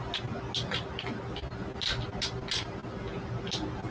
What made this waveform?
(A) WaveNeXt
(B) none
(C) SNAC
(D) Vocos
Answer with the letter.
B